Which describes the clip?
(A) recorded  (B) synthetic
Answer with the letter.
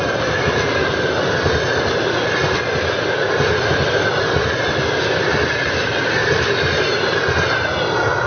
A